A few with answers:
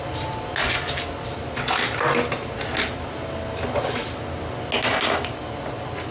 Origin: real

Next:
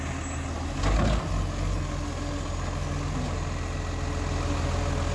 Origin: real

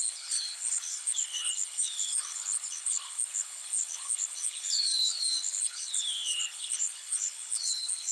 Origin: fake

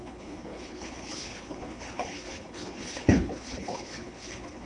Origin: fake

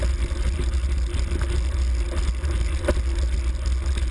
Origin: real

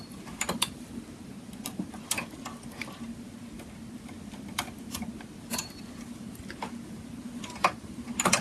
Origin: real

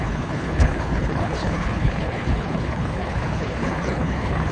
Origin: fake